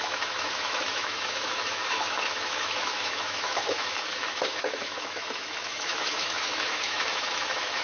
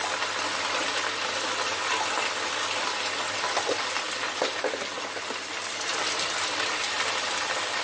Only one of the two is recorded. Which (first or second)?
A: second